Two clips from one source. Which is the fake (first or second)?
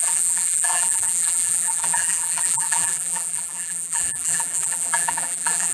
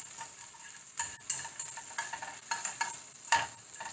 first